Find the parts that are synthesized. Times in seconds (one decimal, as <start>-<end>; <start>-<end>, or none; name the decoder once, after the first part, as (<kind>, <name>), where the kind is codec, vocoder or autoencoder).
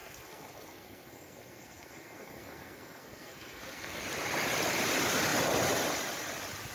0.0-4.0 (codec, SNAC)